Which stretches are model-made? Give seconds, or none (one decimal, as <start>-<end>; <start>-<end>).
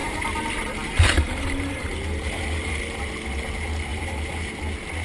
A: 0.0-3.0; 3.9-4.5